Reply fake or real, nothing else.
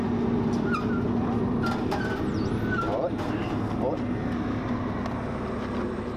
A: real